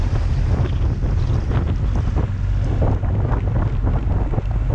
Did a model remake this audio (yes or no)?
no